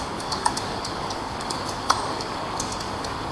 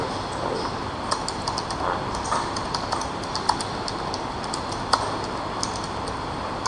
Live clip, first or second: second